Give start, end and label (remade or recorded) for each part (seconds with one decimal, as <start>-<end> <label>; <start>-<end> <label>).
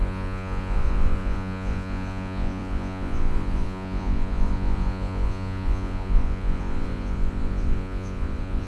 0.0-8.7 remade